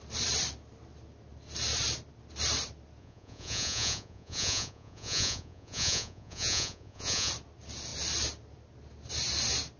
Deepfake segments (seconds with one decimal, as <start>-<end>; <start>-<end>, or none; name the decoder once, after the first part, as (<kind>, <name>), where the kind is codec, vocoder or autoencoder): 3.0-7.3 (vocoder, Vocos)